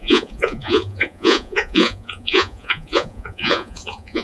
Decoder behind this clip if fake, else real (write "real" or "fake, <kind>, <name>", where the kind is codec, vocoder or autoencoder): fake, vocoder, Vocos